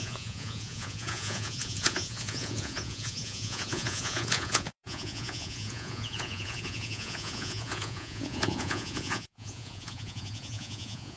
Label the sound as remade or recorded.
remade